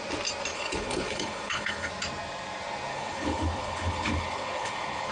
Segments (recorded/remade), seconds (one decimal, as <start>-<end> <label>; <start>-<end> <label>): 0.0-0.5 recorded; 0.5-1.9 remade; 1.9-2.9 recorded; 2.9-5.1 remade